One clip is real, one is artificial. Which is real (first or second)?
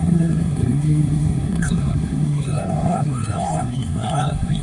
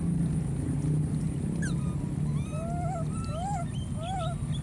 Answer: second